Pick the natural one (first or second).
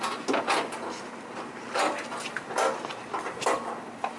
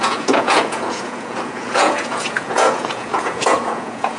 first